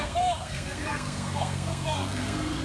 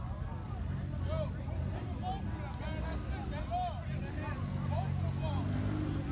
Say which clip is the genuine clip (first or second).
second